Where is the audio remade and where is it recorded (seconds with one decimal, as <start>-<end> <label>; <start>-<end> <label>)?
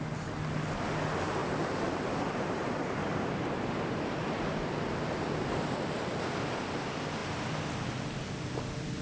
0.0-9.0 recorded